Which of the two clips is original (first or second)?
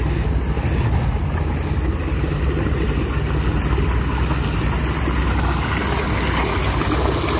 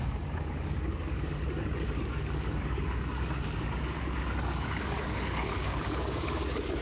first